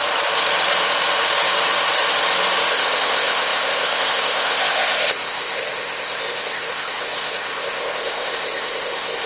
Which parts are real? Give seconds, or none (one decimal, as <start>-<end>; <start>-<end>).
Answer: 0.0-2.7